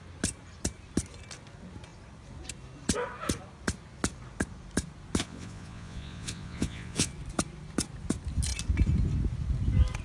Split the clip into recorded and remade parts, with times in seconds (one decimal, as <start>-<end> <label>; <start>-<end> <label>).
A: 0.0-5.2 recorded; 5.2-7.1 remade; 7.1-10.0 recorded

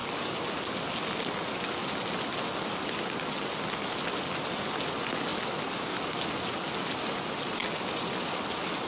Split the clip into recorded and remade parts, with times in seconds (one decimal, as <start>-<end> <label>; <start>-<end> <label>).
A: 0.0-8.9 recorded

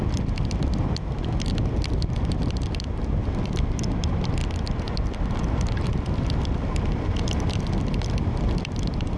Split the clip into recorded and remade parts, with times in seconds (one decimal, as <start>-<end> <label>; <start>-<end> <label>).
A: 0.0-9.2 recorded

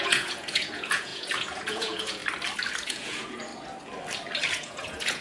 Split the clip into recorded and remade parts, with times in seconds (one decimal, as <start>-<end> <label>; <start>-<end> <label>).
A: 0.0-2.2 remade; 2.2-2.7 recorded; 2.7-3.5 remade; 3.5-4.5 recorded; 4.5-5.2 remade

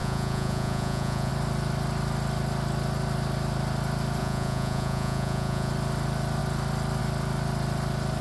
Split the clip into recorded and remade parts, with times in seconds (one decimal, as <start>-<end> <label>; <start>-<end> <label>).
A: 0.0-1.3 remade; 1.3-4.2 recorded; 4.2-5.7 remade; 5.7-8.2 recorded

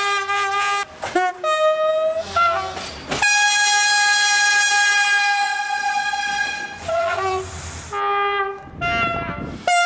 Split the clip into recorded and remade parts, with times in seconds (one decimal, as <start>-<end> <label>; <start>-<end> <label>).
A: 0.0-5.4 recorded; 5.4-7.5 remade; 7.5-9.9 recorded

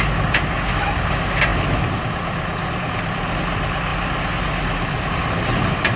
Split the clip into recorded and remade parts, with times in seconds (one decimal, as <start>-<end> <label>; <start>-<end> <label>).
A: 0.0-6.0 recorded

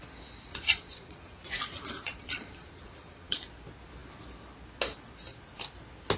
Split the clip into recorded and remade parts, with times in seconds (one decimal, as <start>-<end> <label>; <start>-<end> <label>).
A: 0.0-0.5 recorded; 0.5-3.5 remade; 3.5-6.2 recorded